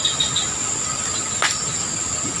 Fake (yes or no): no